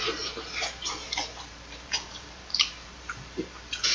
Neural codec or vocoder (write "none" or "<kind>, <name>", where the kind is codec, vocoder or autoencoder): vocoder, BigVGAN v2